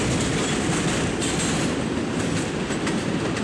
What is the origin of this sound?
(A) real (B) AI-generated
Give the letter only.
A